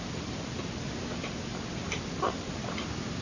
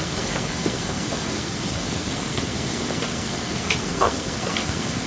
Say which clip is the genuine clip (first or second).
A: first